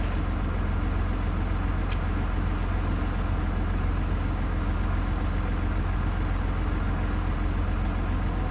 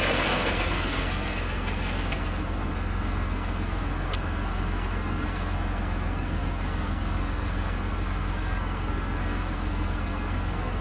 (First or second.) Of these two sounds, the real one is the first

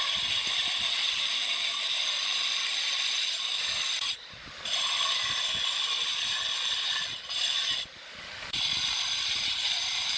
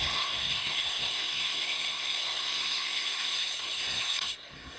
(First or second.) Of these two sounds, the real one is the first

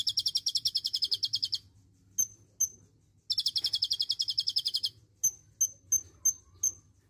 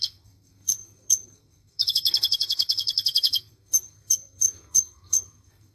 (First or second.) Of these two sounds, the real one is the first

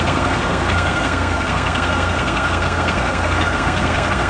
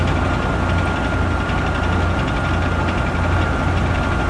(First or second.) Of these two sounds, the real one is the second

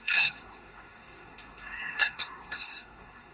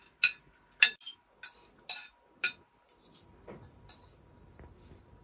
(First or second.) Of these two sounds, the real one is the second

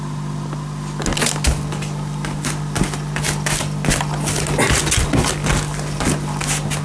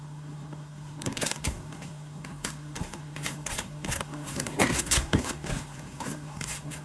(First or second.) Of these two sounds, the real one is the first